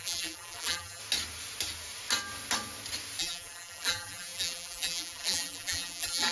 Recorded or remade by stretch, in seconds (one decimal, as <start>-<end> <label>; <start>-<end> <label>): 0.0-1.0 remade; 1.0-3.2 recorded; 3.2-6.3 remade

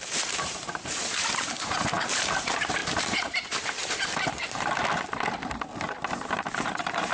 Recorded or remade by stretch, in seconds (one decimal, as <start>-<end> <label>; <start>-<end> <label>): 0.0-4.8 remade; 4.8-6.5 recorded; 6.5-7.1 remade

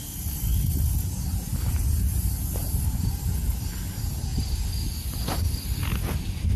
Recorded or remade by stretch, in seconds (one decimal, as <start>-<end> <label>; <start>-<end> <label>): 0.0-2.6 recorded; 2.6-3.4 remade; 3.4-6.6 recorded